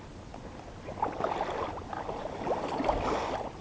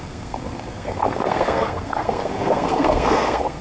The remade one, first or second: second